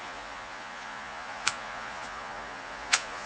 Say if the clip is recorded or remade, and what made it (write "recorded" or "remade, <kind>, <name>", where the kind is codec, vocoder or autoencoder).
remade, vocoder, Vocos